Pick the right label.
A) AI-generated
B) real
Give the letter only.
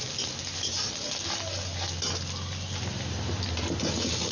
B